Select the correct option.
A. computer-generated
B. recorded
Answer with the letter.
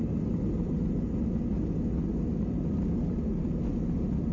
B